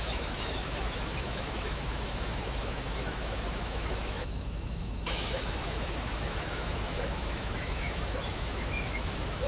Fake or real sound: fake